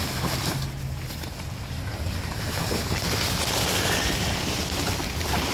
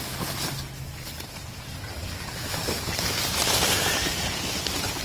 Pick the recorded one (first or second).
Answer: first